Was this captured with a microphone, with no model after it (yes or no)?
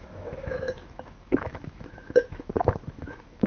no